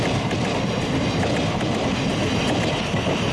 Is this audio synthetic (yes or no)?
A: no